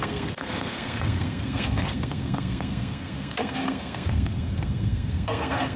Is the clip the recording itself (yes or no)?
no